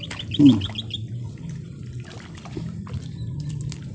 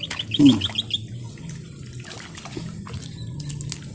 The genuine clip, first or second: second